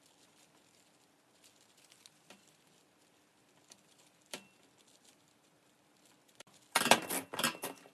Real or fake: real